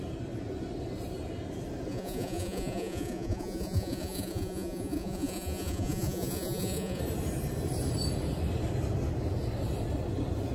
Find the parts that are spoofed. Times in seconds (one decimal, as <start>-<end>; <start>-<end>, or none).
1.9-7.0